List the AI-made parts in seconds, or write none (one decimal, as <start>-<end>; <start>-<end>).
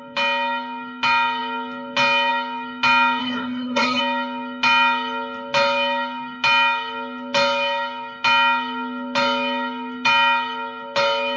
3.2-4.0